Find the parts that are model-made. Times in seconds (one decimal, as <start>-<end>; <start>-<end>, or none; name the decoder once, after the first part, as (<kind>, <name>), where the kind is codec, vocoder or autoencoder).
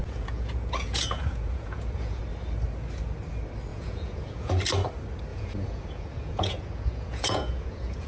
0.0-2.2 (vocoder, Vocos); 3.7-4.6; 5.3-8.1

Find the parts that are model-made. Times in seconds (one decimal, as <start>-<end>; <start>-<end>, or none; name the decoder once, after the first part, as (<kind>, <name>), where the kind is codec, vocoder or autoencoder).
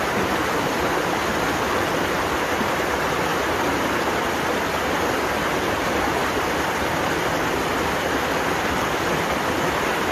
none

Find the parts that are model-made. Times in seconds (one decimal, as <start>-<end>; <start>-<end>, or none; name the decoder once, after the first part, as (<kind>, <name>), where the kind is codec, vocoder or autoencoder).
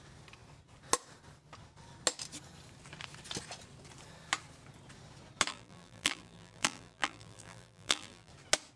5.5-8.3 (vocoder, BigVGAN v2)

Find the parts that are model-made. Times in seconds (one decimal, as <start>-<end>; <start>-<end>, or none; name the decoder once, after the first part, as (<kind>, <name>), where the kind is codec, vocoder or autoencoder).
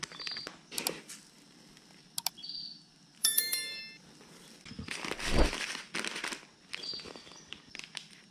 3.2-3.8 (codec, SNAC)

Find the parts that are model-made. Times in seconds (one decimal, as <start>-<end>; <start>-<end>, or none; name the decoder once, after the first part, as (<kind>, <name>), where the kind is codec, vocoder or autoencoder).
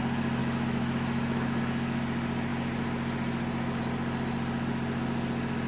0.4-1.6 (autoencoder, DAC-VAE)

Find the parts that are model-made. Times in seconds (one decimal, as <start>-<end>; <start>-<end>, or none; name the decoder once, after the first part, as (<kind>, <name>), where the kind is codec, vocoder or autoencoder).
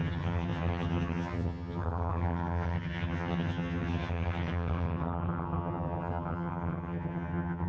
0.0-7.7 (vocoder, HiFi-GAN)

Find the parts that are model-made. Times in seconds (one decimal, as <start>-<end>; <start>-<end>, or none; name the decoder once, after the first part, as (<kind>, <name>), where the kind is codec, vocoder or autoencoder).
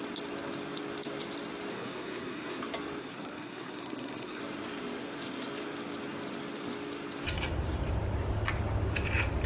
1.7-2.6 (codec, SNAC); 3.0-4.4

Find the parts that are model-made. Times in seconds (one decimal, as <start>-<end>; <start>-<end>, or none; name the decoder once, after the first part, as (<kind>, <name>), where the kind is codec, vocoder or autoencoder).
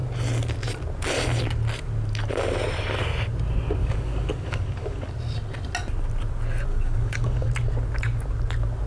3.8-5.1 (codec, DAC); 6.7-7.5